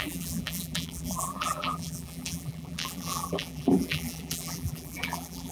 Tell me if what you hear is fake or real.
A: fake